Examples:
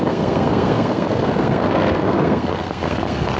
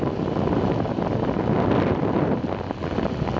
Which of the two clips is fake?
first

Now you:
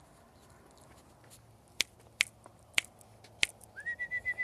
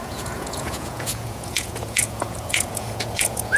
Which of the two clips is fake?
second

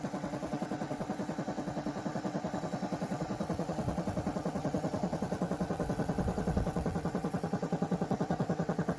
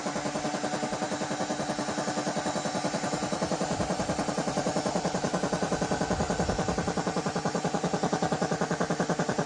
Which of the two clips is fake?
first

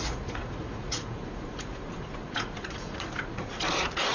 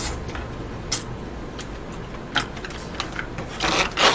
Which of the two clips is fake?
first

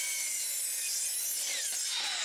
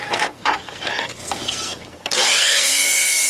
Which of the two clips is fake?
second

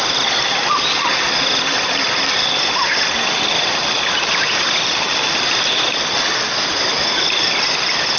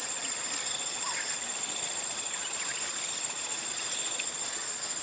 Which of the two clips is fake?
second